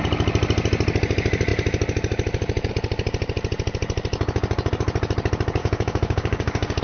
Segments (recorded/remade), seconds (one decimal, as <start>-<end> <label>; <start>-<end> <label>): 0.0-5.6 recorded; 5.6-6.8 remade